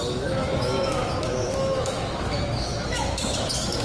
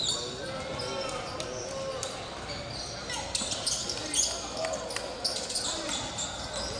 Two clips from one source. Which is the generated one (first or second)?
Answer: first